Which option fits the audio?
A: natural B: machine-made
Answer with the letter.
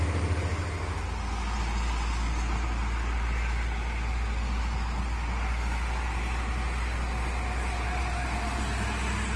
A